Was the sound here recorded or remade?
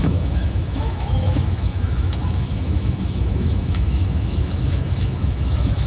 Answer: remade